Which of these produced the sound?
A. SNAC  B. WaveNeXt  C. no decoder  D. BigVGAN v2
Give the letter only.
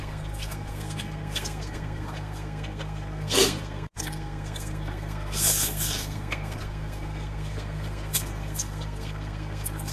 A